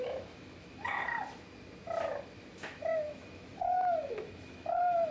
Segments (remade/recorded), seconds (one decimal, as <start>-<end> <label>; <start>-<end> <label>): 0.0-1.0 remade; 1.0-2.2 recorded; 2.2-5.1 remade